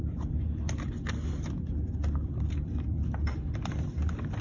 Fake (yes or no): no